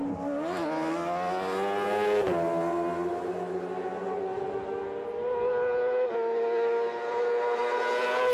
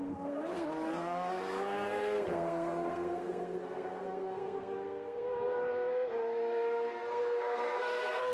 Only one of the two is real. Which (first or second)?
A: first